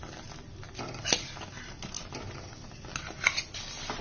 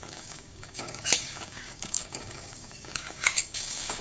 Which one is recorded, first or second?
first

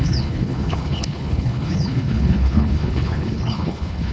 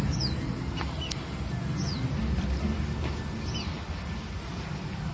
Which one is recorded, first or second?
second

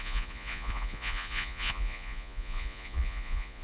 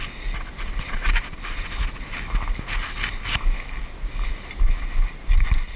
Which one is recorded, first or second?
second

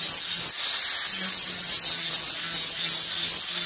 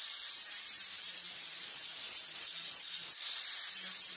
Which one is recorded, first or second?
first